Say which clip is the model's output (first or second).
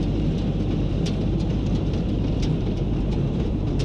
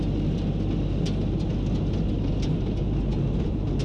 first